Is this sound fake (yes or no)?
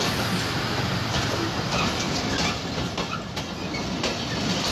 no